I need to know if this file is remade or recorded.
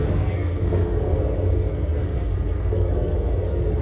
remade